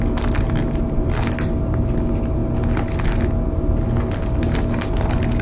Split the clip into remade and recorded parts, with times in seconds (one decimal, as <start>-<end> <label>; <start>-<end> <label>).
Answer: 0.0-5.4 recorded